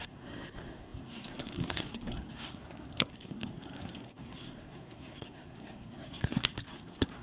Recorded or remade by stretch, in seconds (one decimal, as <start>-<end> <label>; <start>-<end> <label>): 0.0-7.2 remade